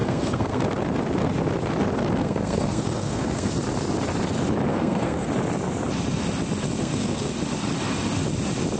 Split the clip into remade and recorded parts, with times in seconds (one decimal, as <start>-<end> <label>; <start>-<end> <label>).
0.0-0.6 remade; 0.6-2.2 recorded; 2.2-3.5 remade; 3.5-4.7 recorded; 4.7-5.3 remade; 5.3-6.8 recorded; 6.8-7.3 remade; 7.3-8.8 recorded